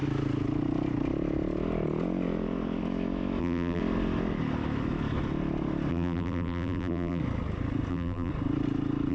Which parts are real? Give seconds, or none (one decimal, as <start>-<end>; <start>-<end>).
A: 0.0-3.4; 3.8-5.9; 7.2-7.9; 8.3-9.1